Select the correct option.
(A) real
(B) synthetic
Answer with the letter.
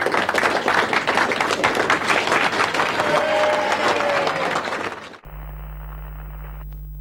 A